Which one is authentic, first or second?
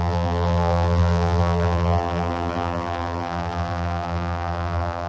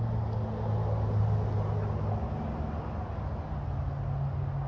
second